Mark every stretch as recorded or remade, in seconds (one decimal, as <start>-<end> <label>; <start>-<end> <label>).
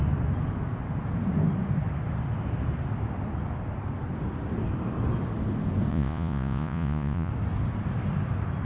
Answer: 0.0-5.9 recorded; 5.9-7.3 remade; 7.3-8.6 recorded